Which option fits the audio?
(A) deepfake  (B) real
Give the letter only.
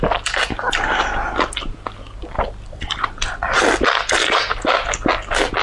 B